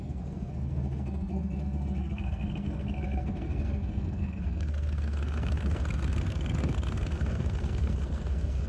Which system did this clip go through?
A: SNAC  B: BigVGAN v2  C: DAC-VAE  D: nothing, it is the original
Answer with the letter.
A